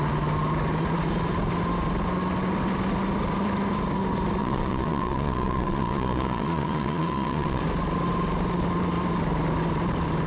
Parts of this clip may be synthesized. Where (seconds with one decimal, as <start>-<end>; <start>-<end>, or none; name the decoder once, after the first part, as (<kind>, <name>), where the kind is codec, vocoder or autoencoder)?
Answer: 4.4-7.6 (vocoder, Vocos)